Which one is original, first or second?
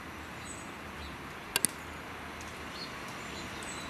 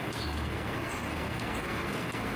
first